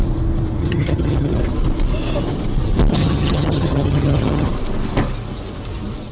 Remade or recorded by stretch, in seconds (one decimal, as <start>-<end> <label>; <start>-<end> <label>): 0.0-0.6 recorded; 0.6-1.4 remade; 1.4-2.9 recorded; 2.9-4.5 remade; 4.5-6.1 recorded